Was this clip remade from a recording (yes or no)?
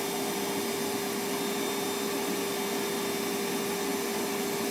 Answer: no